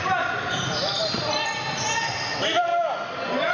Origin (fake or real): real